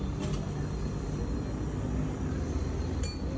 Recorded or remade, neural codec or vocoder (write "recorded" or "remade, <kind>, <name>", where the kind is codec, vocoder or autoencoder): recorded